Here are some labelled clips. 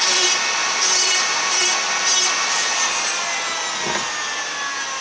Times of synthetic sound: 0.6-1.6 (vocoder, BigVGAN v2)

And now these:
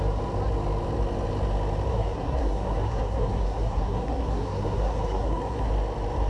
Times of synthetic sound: 1.9-5.7 (codec, SNAC)